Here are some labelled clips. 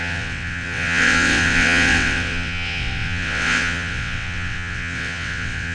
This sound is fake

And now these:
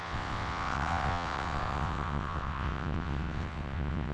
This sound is fake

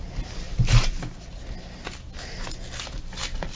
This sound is real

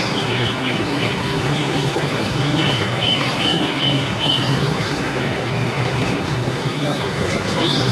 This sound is fake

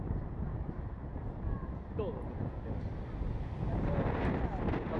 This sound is real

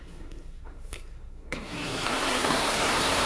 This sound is fake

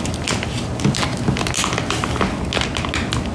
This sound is real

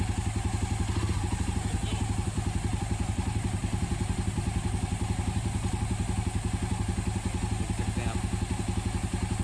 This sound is real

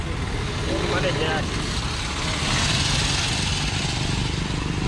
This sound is real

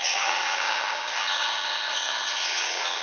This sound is fake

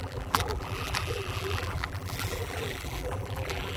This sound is fake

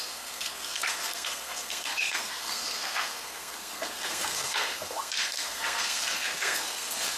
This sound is fake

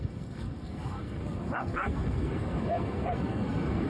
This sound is fake